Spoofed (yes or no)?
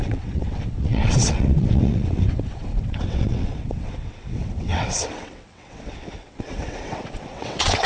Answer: yes